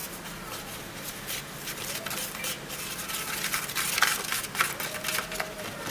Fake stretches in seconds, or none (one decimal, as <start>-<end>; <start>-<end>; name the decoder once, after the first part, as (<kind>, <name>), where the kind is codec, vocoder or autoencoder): none